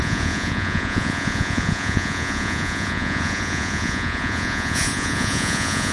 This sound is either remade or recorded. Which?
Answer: remade